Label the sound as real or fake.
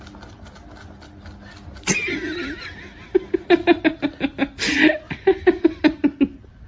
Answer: real